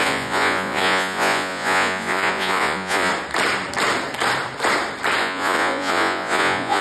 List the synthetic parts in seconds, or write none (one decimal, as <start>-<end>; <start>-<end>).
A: 0.0-3.1; 5.2-6.8